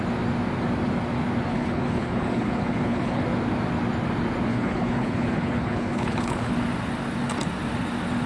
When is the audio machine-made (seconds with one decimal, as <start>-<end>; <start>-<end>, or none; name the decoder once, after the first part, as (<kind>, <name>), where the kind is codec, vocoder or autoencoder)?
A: 1.5-3.2 (codec, HILCodec); 4.5-6.5